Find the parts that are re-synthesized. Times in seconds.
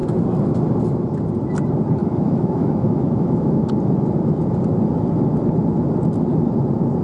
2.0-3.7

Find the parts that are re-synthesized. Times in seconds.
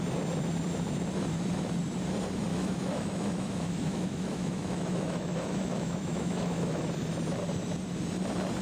2.5-6.9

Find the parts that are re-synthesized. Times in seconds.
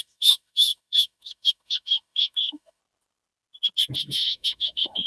0.0-2.8; 4.0-5.1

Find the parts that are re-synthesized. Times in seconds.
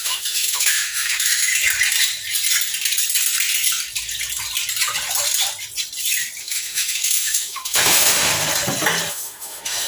0.0-1.5; 6.4-8.3; 9.1-9.9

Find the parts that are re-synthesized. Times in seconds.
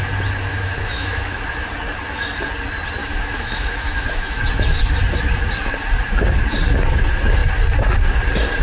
0.5-1.4; 3.0-4.4